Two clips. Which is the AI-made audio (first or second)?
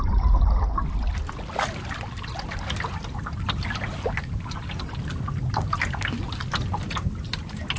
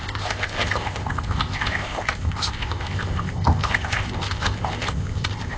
second